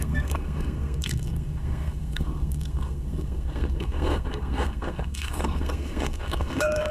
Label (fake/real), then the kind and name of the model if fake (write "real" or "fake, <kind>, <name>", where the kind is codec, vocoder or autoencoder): fake, codec, SNAC